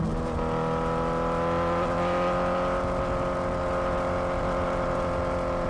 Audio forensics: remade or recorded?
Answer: recorded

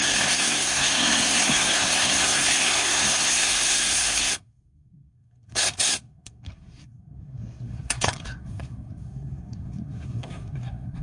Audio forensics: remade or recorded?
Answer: remade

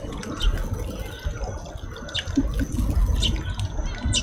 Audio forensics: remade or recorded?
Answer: recorded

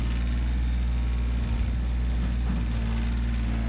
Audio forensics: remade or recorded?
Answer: recorded